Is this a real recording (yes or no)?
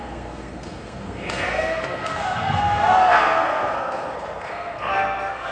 no